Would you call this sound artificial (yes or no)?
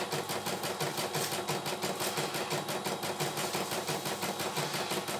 no